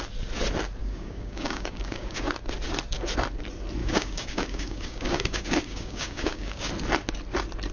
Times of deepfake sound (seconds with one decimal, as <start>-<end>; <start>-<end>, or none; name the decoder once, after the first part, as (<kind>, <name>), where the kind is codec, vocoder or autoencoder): 0.8-2.3 (codec, DAC); 3.8-6.7